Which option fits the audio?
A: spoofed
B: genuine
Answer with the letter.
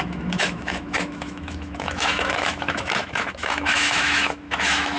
A